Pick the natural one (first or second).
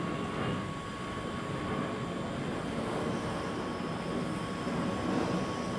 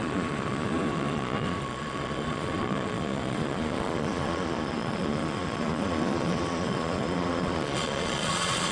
first